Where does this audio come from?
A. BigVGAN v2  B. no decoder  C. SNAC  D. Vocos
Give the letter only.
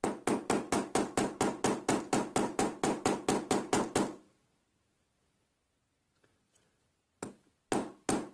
B